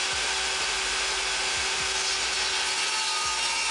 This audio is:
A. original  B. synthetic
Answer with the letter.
A